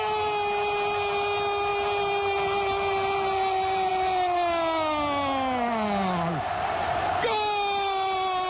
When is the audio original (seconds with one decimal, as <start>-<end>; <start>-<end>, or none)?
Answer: 0.0-8.5